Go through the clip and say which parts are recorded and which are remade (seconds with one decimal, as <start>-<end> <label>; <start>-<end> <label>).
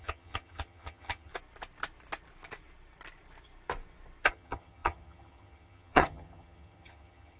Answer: 0.0-1.3 remade; 1.3-4.3 recorded; 4.3-7.4 remade